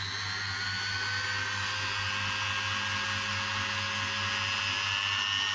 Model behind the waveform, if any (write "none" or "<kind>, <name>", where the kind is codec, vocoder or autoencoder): none